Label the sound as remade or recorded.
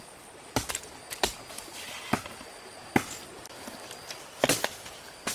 recorded